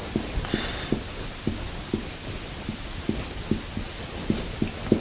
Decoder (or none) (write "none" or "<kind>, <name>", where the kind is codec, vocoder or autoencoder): none